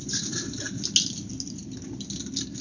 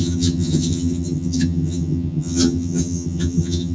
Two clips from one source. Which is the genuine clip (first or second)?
first